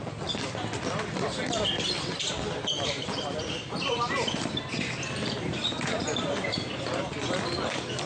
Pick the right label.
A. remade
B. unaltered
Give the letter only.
A